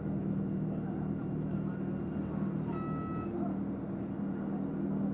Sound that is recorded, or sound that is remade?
recorded